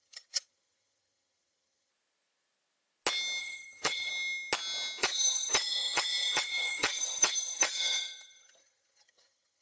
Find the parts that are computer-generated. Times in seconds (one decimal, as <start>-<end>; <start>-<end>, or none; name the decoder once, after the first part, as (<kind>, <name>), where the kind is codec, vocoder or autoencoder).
0.0-1.9 (vocoder, HiFi-GAN); 3.4-4.1; 5.0-9.6

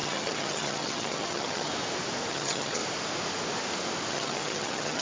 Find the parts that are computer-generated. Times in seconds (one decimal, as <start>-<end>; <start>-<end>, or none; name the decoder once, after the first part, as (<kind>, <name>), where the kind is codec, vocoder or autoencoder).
0.0-1.7 (vocoder, HiFi-GAN); 2.3-2.8; 4.1-5.0

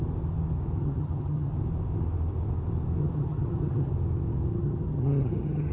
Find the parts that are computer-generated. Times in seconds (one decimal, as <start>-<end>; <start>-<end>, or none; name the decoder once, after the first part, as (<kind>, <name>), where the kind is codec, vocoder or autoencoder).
0.8-1.5 (vocoder, HiFi-GAN); 3.0-3.9; 4.5-5.7